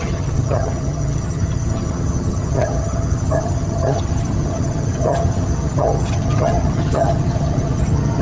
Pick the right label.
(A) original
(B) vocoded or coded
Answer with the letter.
B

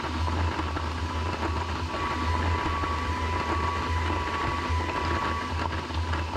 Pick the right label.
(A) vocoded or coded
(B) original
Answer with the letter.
B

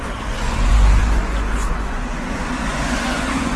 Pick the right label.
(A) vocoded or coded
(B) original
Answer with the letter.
A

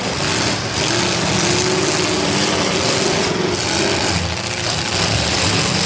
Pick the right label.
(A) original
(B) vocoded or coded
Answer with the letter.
A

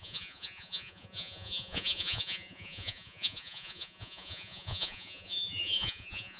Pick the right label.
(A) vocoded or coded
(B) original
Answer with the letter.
A